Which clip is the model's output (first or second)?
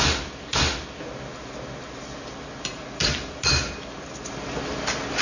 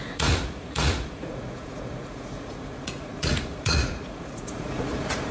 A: second